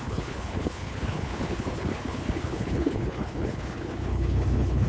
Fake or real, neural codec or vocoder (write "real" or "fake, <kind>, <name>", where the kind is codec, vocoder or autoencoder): fake, codec, HILCodec